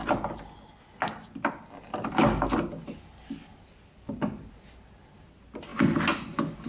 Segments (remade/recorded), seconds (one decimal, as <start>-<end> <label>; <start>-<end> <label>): 0.0-6.7 recorded